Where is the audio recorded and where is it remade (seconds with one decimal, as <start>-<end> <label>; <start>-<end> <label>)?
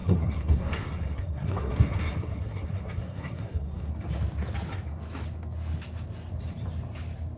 0.0-3.9 remade; 3.9-7.4 recorded